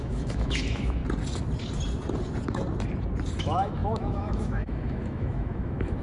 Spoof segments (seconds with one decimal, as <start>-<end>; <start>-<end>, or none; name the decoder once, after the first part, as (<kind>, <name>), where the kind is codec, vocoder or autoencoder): 0.0-1.0 (autoencoder, DAC-VAE); 3.4-6.0

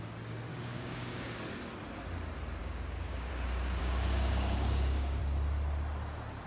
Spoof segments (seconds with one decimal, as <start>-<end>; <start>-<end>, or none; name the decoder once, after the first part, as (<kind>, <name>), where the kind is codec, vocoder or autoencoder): 0.5-1.4 (codec, DAC); 2.6-3.3; 3.8-5.2

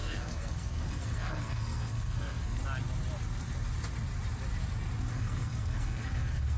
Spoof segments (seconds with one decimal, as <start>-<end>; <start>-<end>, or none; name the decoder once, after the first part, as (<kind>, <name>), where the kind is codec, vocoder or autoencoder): 0.0-2.6 (codec, SNAC); 5.1-6.6